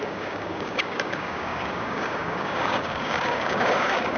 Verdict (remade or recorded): remade